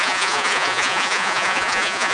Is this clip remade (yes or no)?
yes